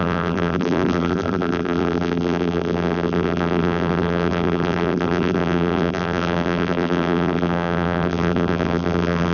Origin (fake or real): fake